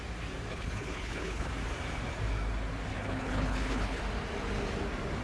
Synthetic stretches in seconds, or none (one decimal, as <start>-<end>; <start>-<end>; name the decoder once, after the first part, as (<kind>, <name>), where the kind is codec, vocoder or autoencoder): 0.5-1.5 (codec, HILCodec); 2.9-4.0